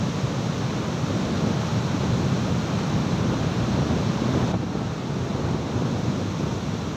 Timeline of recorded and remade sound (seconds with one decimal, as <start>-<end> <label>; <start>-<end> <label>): 0.0-5.3 recorded; 5.3-6.3 remade; 6.3-7.0 recorded